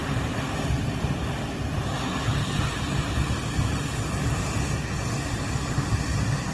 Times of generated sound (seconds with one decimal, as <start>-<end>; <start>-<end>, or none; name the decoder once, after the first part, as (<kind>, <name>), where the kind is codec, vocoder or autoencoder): 0.0-1.8 (vocoder, BigVGAN v2)